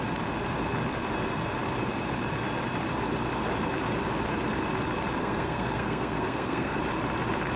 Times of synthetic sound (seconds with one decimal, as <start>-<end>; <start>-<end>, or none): 5.2-6.8